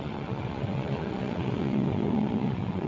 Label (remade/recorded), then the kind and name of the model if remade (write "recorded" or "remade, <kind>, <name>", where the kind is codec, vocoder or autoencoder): remade, vocoder, WaveNeXt